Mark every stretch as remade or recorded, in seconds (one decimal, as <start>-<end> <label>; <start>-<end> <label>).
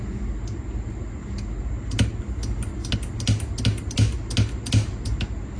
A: 0.0-5.6 recorded